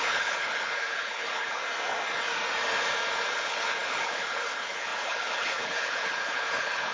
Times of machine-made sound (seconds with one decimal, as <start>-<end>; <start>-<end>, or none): 0.0-1.6; 3.3-6.9